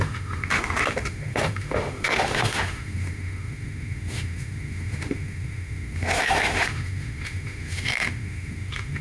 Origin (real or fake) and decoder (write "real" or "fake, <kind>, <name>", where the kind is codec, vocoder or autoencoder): fake, autoencoder, DAC-VAE